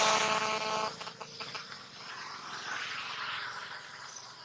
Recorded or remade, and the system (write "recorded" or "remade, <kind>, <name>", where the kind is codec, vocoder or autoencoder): recorded